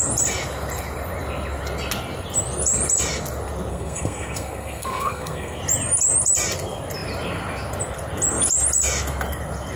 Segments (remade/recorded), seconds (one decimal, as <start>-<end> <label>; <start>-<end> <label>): 0.0-3.7 recorded; 3.7-5.6 remade; 5.6-9.8 recorded